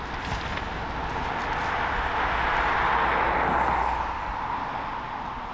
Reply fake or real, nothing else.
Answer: real